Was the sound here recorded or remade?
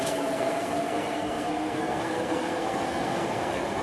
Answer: remade